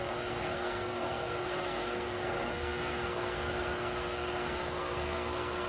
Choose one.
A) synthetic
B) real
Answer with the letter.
A